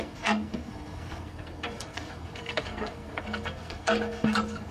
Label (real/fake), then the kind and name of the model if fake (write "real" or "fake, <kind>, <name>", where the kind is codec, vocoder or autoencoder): fake, codec, SNAC